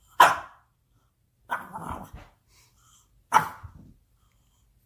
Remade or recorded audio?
recorded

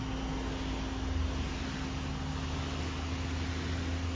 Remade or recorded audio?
recorded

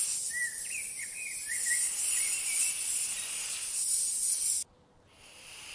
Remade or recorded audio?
recorded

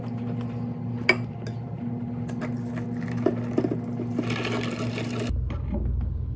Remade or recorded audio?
recorded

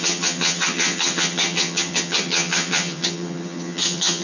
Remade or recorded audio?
remade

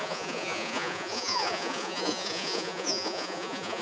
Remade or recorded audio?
remade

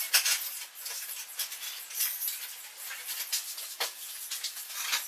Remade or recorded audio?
recorded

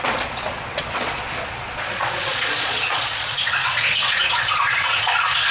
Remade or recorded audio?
remade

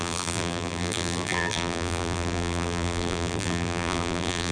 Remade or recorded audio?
remade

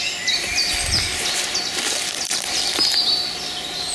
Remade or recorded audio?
recorded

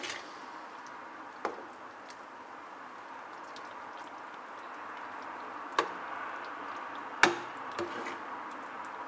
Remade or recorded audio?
recorded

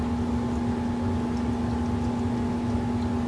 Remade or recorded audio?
recorded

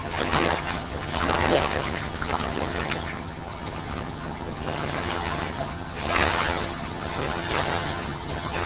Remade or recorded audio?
remade